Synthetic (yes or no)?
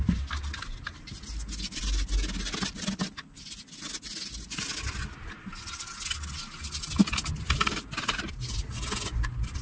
no